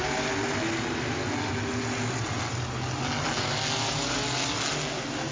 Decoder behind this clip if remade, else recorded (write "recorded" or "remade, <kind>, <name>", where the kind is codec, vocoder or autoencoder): recorded